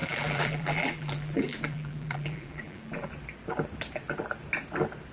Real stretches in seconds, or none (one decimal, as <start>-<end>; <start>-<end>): 3.1-5.1